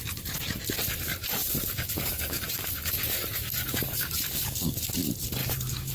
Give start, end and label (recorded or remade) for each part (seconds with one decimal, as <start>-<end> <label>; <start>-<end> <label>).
0.0-1.4 recorded; 1.4-4.9 remade; 4.9-5.4 recorded; 5.4-5.9 remade